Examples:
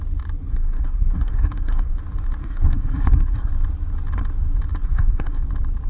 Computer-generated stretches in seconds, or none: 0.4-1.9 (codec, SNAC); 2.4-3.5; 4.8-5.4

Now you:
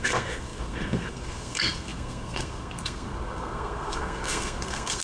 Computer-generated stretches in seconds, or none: 0.0-5.0 (codec, SNAC)

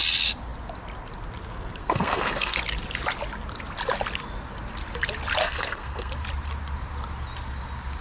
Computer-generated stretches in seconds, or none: 1.8-2.6 (codec, SNAC); 5.4-6.1

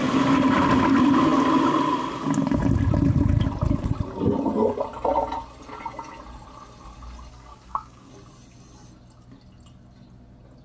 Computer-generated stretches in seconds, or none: 7.3-8.1 (codec, SNAC)

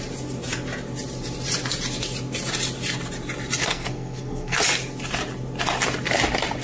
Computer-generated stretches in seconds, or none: 3.6-4.6 (codec, SNAC)

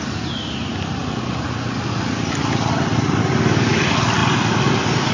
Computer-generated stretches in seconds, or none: none

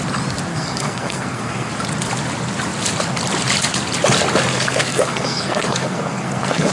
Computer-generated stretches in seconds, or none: 0.5-1.7 (codec, SNAC); 4.5-6.7

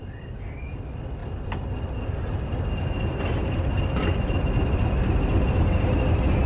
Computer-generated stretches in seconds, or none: none